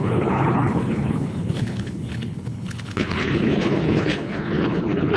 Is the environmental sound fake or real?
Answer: fake